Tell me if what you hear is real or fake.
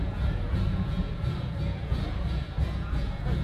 fake